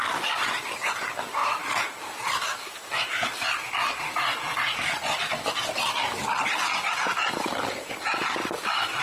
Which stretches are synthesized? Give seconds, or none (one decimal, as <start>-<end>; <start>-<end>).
1.4-3.6